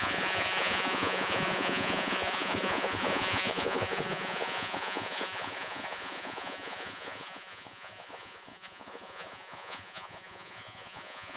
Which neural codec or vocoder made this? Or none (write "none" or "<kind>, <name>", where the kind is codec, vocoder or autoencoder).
vocoder, Vocos